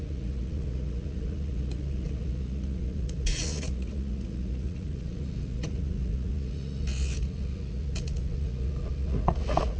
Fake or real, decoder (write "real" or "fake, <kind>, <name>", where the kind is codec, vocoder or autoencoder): fake, vocoder, Vocos